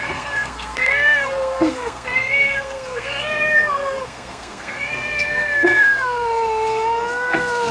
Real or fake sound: fake